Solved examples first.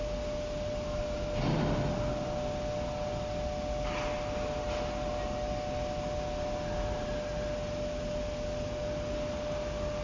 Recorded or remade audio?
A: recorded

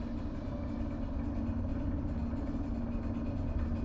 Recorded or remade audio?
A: recorded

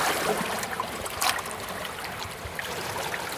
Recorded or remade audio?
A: remade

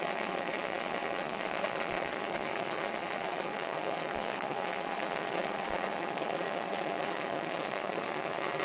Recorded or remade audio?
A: remade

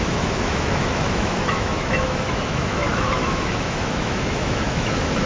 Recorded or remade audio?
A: remade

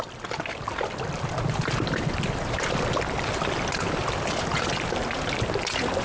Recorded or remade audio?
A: recorded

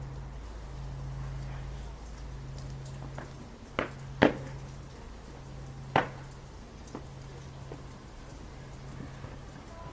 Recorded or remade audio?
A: recorded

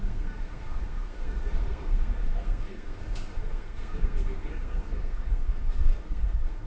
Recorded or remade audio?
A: remade